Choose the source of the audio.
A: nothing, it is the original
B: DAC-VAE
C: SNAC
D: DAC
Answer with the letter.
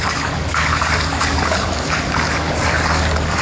D